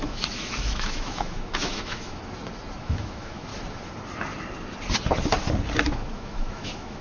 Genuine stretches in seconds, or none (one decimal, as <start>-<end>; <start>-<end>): 2.2-2.8; 3.5-5.9